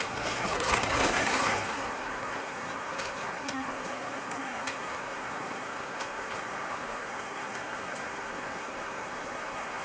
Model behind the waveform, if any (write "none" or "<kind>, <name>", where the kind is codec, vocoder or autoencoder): codec, SNAC